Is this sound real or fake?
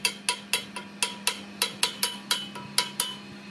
real